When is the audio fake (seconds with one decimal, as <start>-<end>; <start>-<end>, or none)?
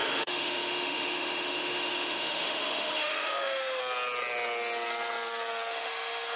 0.0-3.8; 5.7-6.4